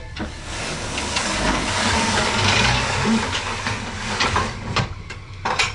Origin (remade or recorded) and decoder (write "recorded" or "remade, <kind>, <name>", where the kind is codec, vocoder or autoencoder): remade, codec, DAC